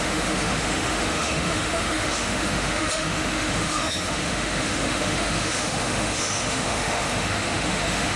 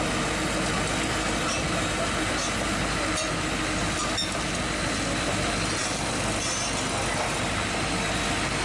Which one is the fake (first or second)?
first